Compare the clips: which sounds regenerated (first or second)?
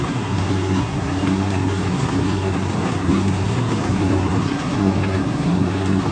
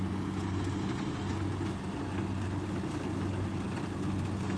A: first